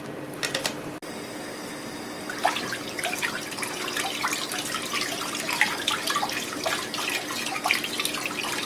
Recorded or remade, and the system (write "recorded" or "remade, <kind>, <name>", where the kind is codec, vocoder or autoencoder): recorded